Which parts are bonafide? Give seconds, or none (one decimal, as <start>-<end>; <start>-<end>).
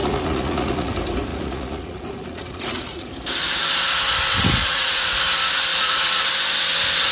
0.9-1.3; 3.1-4.6; 5.2-5.7; 6.2-7.1